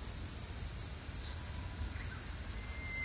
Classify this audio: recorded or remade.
recorded